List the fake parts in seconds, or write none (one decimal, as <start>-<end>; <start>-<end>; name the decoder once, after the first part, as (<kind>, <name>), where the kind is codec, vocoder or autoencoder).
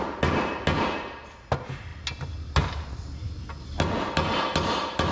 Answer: none